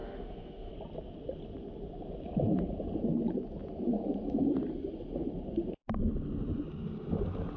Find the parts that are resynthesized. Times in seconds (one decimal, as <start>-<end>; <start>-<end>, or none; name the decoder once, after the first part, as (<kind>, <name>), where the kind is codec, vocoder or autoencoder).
0.0-0.7 (autoencoder, DAC-VAE)